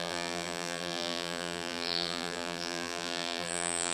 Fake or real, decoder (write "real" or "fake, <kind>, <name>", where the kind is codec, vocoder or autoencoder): fake, vocoder, BigVGAN v2